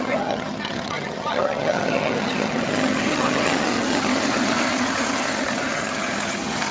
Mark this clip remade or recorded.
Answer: remade